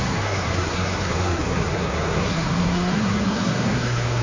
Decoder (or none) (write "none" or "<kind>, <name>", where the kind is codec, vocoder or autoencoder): codec, SNAC